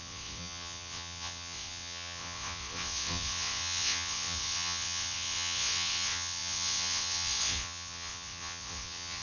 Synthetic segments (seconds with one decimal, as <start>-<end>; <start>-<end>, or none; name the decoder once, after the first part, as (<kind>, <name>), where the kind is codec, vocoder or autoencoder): 0.0-9.2 (vocoder, WaveNeXt)